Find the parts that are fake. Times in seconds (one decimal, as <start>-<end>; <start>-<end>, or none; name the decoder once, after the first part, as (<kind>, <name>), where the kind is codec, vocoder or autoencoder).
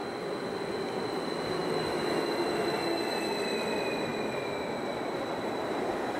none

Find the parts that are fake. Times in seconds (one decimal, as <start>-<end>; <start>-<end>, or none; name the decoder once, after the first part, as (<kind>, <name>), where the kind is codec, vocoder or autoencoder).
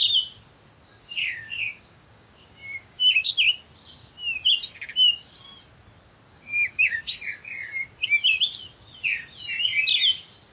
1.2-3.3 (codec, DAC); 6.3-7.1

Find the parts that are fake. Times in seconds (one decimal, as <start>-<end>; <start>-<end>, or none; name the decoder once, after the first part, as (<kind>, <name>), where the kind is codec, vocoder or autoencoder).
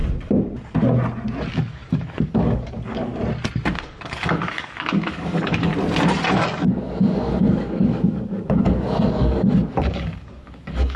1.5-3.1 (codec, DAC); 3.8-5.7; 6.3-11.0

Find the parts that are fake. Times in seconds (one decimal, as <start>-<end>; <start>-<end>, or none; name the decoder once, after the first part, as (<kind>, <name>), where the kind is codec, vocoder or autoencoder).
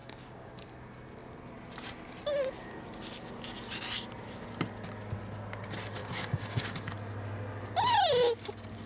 0.0-0.5 (codec, DAC); 6.0-6.8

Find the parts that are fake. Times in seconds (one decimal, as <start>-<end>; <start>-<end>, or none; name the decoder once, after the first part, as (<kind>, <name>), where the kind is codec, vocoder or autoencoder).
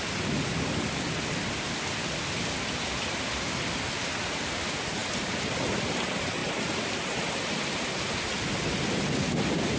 none